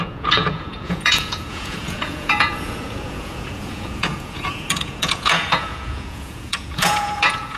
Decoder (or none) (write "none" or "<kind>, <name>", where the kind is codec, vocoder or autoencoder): vocoder, Vocos